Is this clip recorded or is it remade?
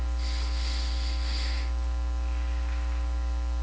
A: recorded